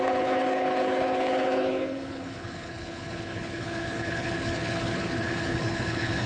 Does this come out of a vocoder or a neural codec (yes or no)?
yes